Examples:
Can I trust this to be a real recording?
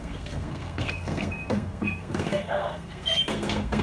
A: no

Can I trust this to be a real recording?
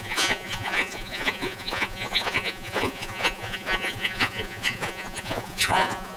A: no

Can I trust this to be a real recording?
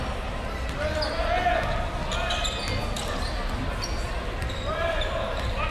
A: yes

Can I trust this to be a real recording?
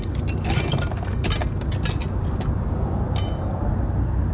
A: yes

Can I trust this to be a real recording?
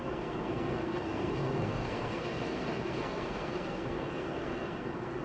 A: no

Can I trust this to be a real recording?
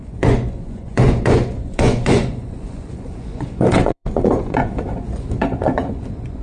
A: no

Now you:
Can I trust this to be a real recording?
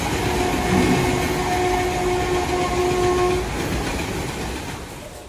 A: yes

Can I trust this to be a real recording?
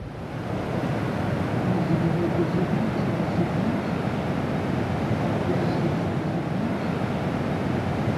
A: yes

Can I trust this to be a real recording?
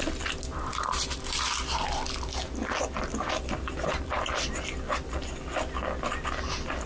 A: yes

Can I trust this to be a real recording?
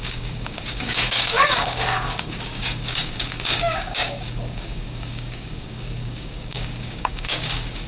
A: no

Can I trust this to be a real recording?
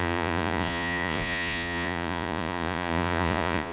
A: no